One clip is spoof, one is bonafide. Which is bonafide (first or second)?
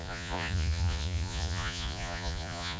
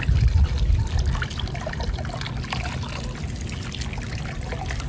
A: second